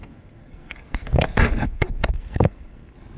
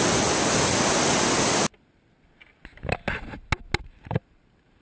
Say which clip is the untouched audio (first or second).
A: second